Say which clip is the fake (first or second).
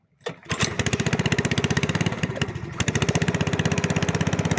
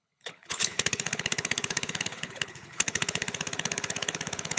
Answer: second